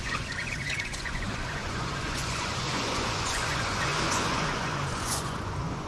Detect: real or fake fake